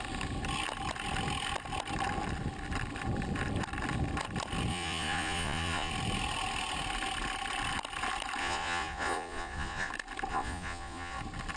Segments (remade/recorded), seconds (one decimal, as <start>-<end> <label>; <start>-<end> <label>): 0.0-4.7 recorded; 4.7-5.9 remade; 5.9-8.4 recorded; 8.4-9.9 remade; 9.9-10.3 recorded; 10.3-11.2 remade; 11.2-11.6 recorded